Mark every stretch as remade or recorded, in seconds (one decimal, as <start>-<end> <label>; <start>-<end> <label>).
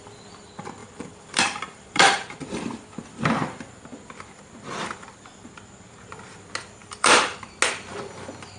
0.0-0.8 recorded; 0.8-2.6 remade; 2.6-6.8 recorded; 6.8-7.6 remade; 7.6-8.6 recorded